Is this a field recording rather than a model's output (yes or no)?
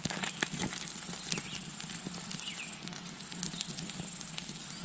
yes